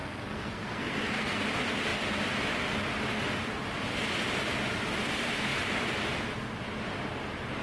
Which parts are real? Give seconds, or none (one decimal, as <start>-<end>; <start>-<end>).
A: 1.4-7.6